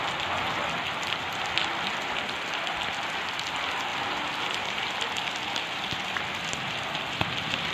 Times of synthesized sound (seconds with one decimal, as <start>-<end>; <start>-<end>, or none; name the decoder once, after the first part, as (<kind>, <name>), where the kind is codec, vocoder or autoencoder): 3.9-4.8 (vocoder, BigVGAN v2)